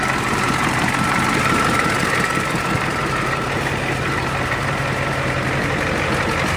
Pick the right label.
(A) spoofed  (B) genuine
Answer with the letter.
A